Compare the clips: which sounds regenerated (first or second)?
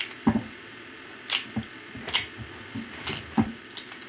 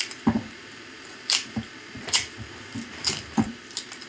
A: second